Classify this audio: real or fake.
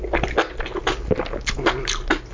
real